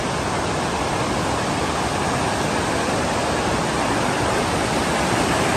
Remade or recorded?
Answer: recorded